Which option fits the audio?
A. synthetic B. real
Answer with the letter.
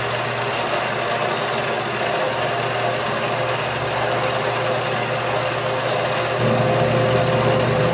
B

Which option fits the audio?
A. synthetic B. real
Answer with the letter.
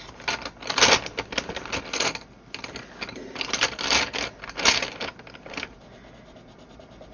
B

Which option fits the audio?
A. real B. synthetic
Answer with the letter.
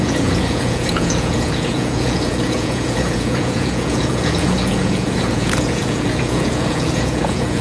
B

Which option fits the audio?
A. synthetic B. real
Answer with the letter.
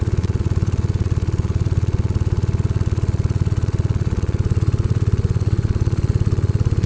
A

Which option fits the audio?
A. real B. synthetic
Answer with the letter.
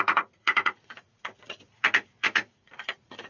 B